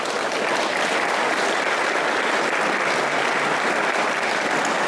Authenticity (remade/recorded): recorded